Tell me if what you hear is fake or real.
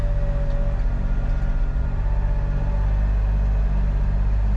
real